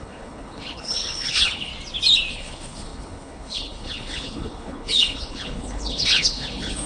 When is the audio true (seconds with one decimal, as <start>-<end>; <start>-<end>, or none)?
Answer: 1.7-2.3